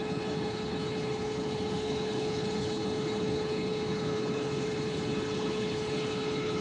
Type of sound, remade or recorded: remade